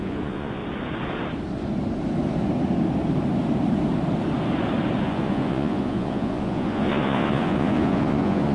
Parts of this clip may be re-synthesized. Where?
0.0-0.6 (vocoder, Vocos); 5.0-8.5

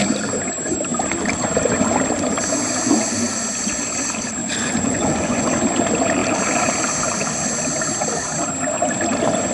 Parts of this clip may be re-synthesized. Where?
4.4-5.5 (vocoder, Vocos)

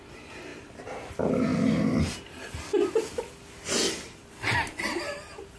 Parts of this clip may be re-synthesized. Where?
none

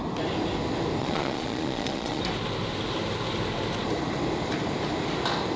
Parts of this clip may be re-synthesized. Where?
1.0-2.2 (vocoder, Vocos)

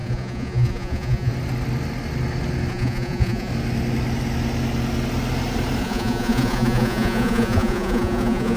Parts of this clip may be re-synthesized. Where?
0.0-1.3 (vocoder, Vocos); 2.7-3.5; 5.8-8.6

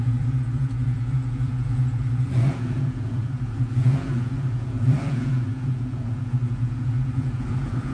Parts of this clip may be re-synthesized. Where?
0.0-7.9 (vocoder, Vocos)

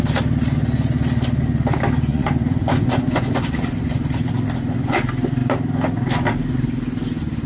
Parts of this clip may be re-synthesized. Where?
2.1-3.3 (vocoder, Vocos)

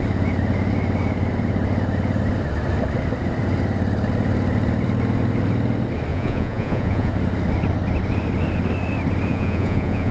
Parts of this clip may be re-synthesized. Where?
6.1-7.1 (vocoder, Vocos); 9.3-10.1